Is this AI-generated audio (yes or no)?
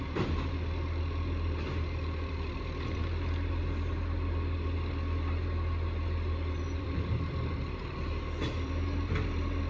yes